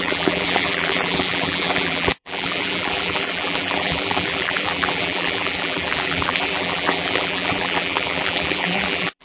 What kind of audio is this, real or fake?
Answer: fake